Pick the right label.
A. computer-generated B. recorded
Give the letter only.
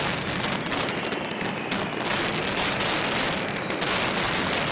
B